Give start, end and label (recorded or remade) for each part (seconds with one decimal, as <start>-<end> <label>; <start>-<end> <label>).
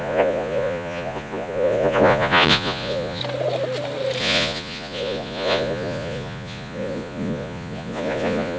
0.0-3.2 remade; 3.2-4.2 recorded; 4.2-8.6 remade